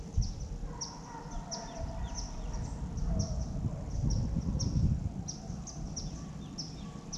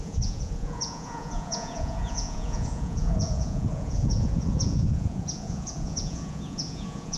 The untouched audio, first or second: first